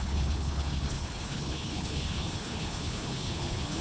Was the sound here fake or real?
fake